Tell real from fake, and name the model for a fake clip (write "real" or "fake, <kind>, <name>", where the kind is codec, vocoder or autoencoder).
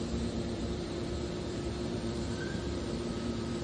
fake, vocoder, BigVGAN v2